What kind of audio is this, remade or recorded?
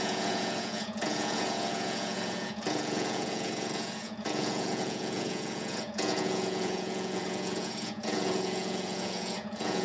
remade